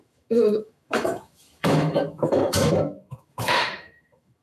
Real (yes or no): no